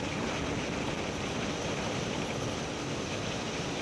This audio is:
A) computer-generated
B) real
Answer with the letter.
B